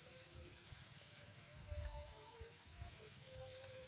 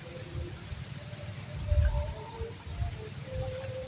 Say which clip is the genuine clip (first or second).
second